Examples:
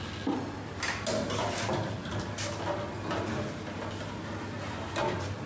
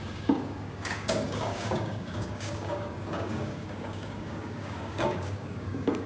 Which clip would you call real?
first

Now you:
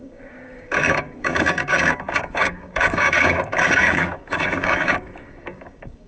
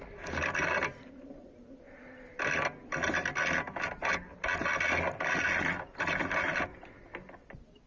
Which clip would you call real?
second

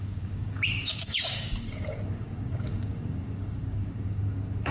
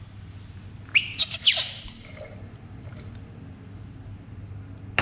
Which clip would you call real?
second